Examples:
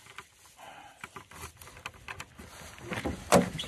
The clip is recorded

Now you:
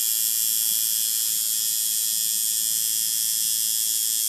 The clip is recorded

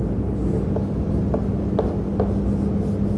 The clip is recorded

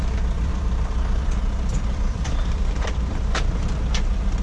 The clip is remade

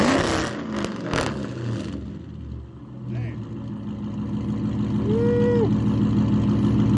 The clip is recorded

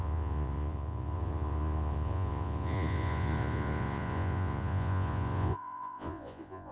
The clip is remade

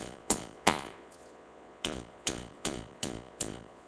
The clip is remade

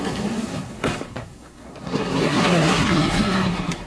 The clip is remade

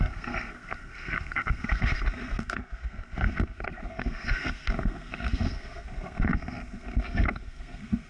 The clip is remade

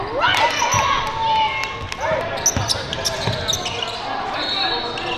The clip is recorded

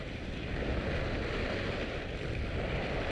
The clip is recorded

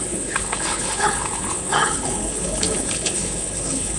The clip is remade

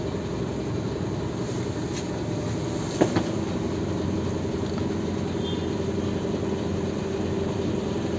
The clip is recorded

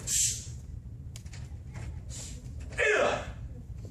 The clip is recorded